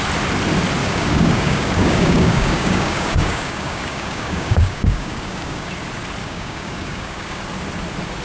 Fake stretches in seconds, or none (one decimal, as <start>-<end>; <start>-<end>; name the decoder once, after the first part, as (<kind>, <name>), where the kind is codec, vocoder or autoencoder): 0.8-5.7 (codec, DAC); 6.2-7.4